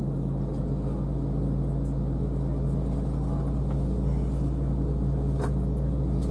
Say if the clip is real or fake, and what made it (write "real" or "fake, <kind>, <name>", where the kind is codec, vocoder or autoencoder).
real